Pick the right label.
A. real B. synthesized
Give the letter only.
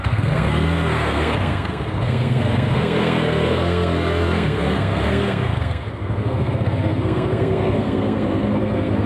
B